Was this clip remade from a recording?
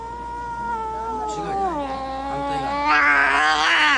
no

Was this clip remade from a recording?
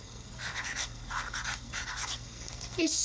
yes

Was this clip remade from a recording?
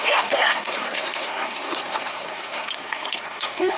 yes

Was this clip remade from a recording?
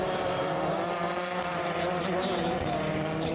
yes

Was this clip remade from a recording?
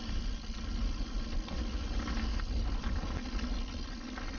no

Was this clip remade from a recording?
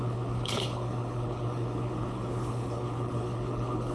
yes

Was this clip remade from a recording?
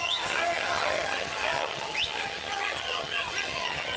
yes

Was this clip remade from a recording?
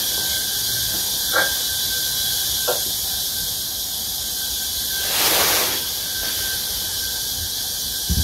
no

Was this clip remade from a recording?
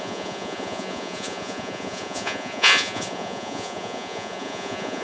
yes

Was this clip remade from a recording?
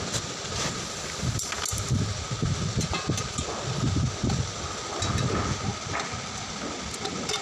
no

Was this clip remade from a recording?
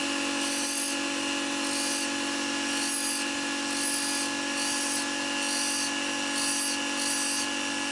no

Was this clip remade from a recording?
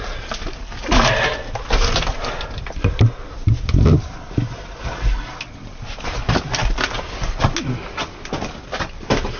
no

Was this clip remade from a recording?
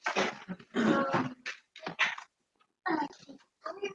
no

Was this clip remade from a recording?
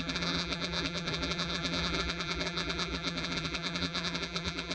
yes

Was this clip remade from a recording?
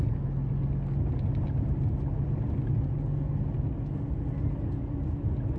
no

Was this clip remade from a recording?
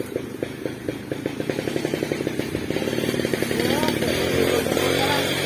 yes